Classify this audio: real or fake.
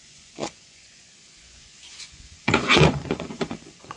fake